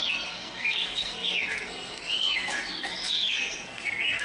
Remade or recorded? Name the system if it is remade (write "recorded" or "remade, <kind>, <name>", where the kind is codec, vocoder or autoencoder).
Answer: remade, codec, SNAC